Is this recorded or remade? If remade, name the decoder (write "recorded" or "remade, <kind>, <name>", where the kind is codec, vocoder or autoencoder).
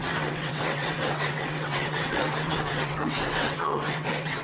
remade, vocoder, WaveNeXt